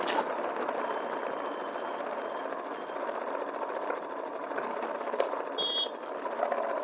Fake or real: real